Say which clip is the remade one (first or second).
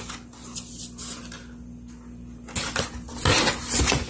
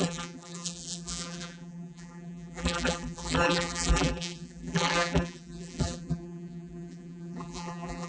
second